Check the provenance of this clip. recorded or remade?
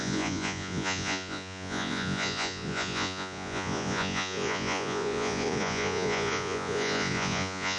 remade